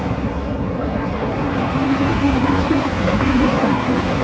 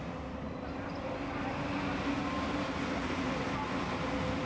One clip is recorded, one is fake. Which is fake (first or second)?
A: first